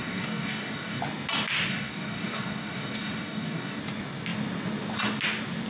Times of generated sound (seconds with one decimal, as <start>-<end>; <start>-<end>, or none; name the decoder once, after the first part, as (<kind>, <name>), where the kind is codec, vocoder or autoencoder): 0.0-1.0 (codec, DAC); 1.7-3.8